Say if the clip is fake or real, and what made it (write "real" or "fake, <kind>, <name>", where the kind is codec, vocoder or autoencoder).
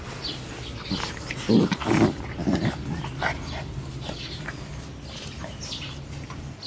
real